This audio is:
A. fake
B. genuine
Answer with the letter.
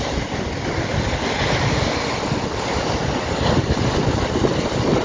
B